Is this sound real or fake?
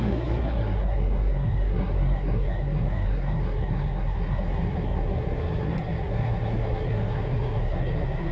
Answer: fake